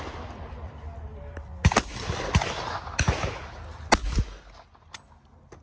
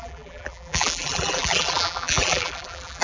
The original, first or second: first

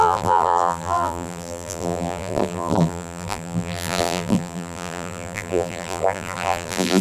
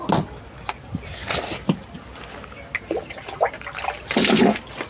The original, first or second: second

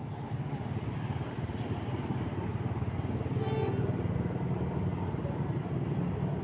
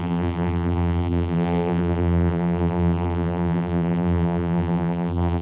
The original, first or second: first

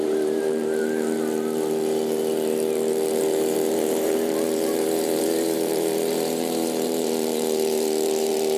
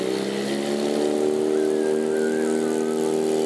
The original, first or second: second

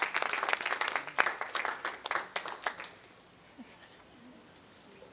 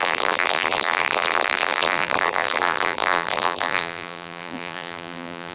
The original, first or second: first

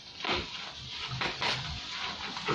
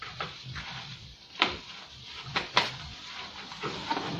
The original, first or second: first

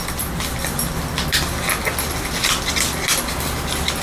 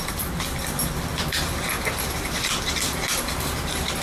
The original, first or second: first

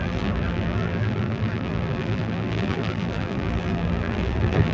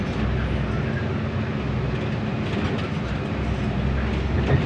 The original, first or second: second